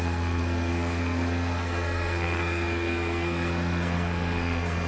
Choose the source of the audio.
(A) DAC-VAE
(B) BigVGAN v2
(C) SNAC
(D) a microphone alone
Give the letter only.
C